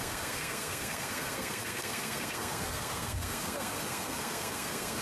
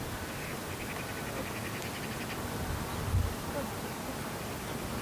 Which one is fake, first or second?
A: first